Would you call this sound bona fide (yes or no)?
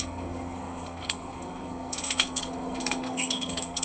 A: no